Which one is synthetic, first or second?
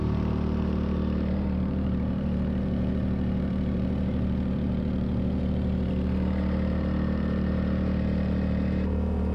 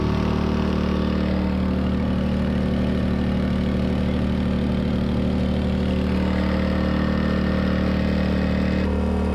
first